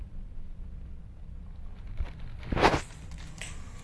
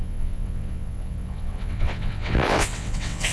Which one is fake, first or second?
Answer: second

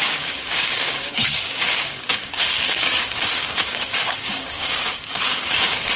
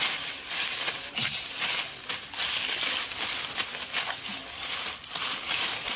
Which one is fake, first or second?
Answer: first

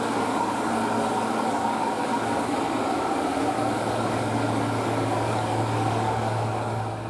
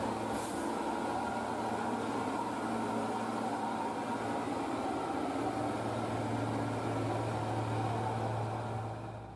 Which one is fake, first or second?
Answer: first